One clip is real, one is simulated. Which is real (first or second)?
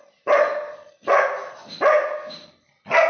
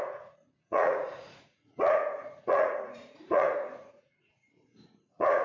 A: first